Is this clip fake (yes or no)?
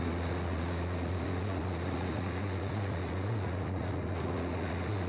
yes